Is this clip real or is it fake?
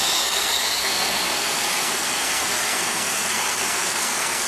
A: fake